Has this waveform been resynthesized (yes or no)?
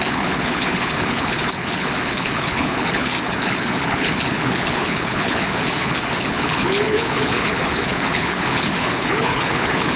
yes